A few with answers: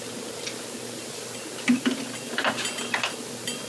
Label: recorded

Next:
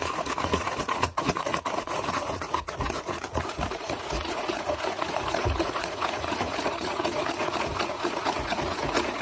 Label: remade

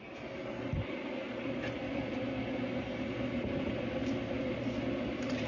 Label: recorded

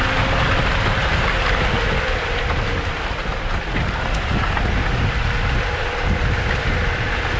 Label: recorded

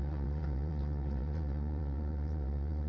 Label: remade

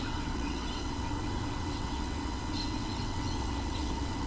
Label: remade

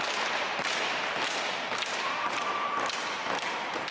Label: recorded